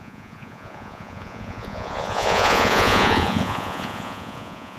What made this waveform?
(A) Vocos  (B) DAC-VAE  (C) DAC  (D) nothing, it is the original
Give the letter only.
A